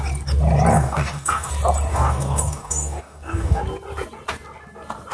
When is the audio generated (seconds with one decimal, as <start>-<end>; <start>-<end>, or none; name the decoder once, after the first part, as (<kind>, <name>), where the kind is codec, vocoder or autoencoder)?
0.7-1.5 (codec, DAC); 1.9-3.6